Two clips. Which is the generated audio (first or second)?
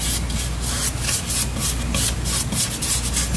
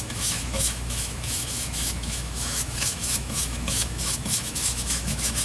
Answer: second